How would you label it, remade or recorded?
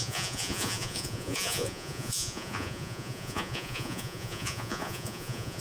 remade